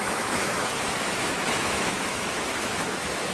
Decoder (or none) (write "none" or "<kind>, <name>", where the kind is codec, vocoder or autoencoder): autoencoder, DAC-VAE